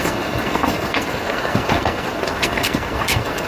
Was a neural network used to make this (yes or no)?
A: yes